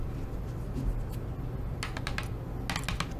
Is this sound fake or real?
real